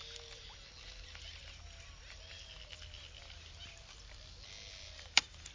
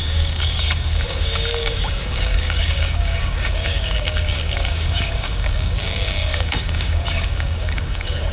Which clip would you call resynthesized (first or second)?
second